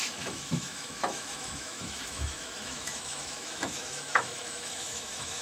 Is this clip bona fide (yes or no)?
no